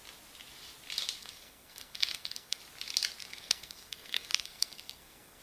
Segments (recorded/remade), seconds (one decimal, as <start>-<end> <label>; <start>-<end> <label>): 0.0-1.2 recorded; 1.2-2.6 remade; 2.6-3.2 recorded; 3.2-5.4 remade

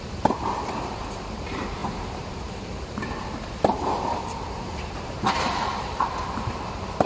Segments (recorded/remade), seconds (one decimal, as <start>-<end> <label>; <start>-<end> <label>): 0.0-7.1 remade

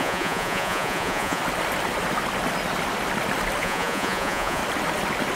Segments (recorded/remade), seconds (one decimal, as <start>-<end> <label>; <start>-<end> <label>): 0.0-1.4 remade; 1.4-3.6 recorded; 3.6-4.6 remade; 4.6-5.4 recorded

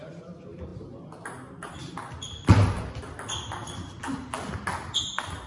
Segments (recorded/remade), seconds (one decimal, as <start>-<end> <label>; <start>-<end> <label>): 0.0-5.5 recorded